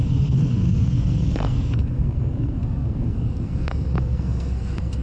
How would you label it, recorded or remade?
remade